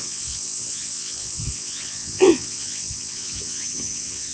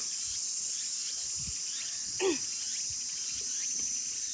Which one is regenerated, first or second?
first